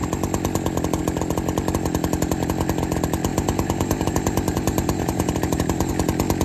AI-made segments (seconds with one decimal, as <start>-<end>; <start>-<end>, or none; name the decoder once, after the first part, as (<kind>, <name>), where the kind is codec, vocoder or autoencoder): 3.3-5.9 (vocoder, BigVGAN v2)